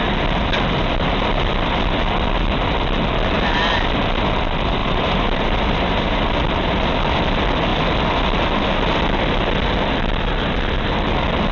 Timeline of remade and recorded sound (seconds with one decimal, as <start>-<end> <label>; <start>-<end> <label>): 0.0-4.8 recorded; 4.8-6.3 remade; 6.3-11.5 recorded